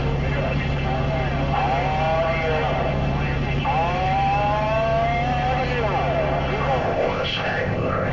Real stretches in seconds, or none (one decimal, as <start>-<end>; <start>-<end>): 0.0-6.8

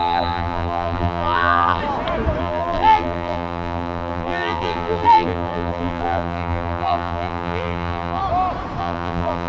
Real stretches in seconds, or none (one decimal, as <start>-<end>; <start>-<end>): 1.8-2.4; 8.2-8.8